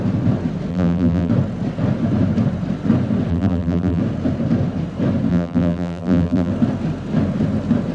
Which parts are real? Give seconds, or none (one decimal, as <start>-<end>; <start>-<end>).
0.0-0.7; 1.3-3.3; 4.0-5.3; 6.5-7.9